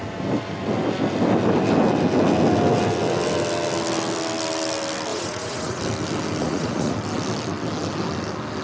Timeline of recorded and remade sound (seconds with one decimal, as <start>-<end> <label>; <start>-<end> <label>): 0.0-5.1 recorded; 5.1-5.8 remade; 5.8-6.4 recorded; 6.4-7.0 remade; 7.0-8.6 recorded